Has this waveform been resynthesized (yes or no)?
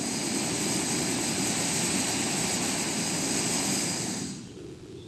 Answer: no